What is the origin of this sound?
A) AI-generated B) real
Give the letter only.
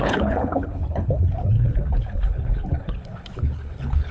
A